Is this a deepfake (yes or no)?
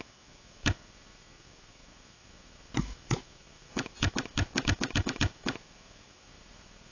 yes